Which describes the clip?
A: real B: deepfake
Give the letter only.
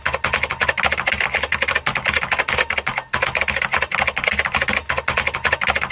A